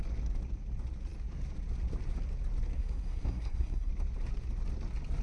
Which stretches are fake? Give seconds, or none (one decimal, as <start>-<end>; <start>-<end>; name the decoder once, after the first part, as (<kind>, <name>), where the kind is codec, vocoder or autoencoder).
2.7-3.9 (codec, SNAC)